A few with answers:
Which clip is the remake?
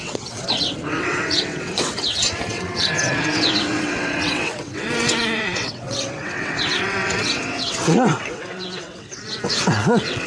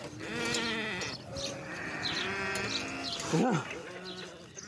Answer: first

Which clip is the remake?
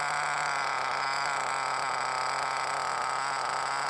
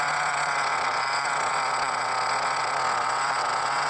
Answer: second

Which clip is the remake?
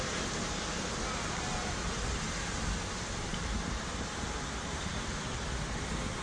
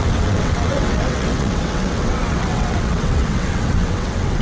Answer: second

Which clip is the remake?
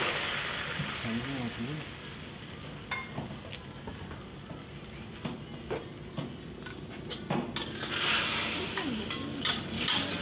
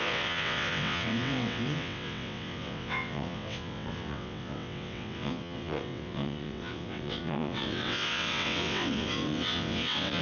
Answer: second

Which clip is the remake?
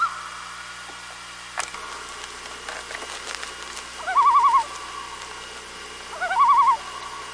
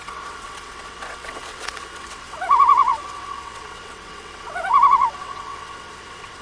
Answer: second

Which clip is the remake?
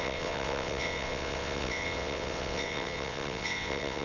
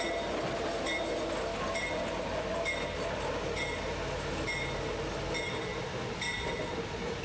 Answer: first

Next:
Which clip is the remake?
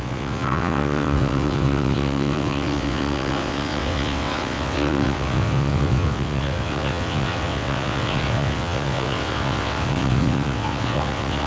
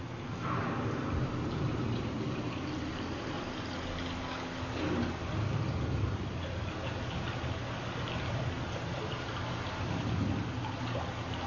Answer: first